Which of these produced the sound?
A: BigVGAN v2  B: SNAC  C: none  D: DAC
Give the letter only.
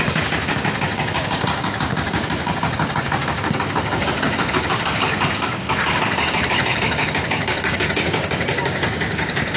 D